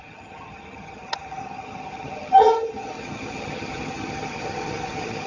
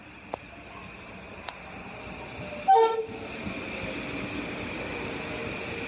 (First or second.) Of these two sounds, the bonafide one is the second